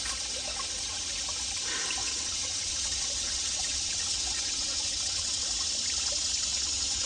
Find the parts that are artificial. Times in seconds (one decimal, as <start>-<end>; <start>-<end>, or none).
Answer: 2.0-5.4; 6.5-7.1